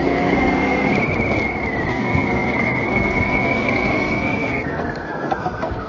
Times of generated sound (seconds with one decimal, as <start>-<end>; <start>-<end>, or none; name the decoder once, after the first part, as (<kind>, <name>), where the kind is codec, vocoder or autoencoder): 0.0-0.9 (codec, SNAC); 1.9-5.9